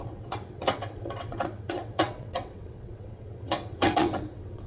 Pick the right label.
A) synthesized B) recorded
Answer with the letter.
A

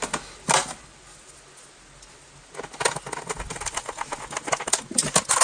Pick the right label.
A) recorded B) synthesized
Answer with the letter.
A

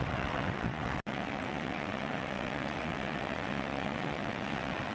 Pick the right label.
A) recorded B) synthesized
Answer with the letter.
B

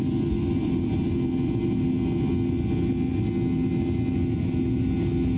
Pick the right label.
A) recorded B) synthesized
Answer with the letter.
A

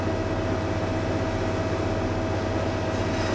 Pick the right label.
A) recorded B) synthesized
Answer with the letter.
A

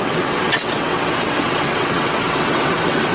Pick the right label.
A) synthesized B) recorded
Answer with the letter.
A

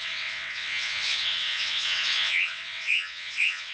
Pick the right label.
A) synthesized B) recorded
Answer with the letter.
A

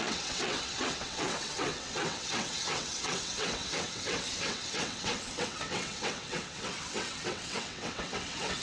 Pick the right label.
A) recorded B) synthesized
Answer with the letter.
B